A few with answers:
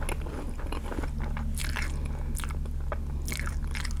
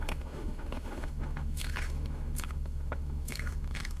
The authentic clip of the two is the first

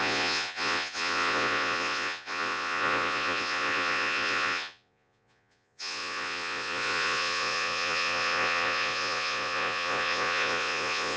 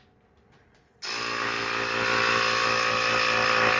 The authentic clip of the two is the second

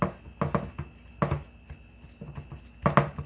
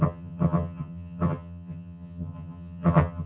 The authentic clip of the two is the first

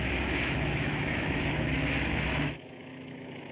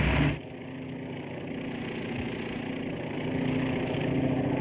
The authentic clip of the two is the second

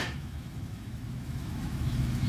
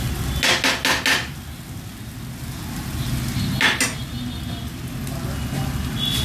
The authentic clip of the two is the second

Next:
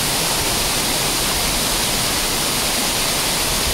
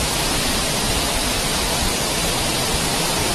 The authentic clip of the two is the first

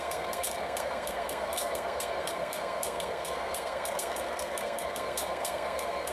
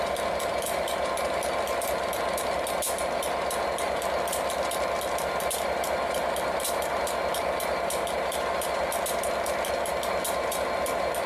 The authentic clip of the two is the second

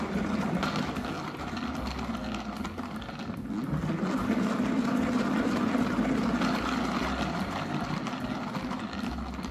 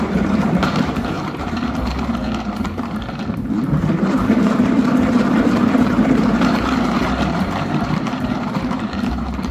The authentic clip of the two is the first